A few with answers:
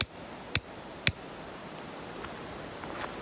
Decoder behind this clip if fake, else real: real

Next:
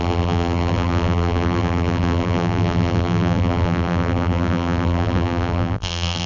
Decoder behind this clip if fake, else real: fake, vocoder, BigVGAN v2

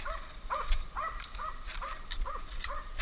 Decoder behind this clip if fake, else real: fake, vocoder, BigVGAN v2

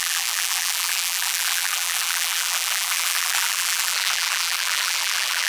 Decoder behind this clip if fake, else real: fake, vocoder, BigVGAN v2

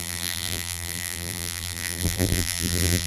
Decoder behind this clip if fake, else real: fake, vocoder, BigVGAN v2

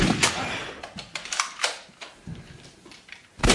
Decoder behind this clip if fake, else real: fake, vocoder, BigVGAN v2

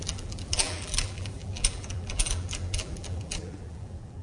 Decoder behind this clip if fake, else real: fake, vocoder, BigVGAN v2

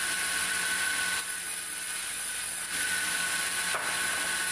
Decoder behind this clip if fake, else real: real